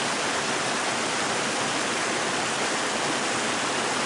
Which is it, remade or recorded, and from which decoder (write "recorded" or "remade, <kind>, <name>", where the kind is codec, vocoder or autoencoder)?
recorded